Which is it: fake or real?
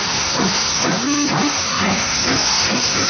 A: fake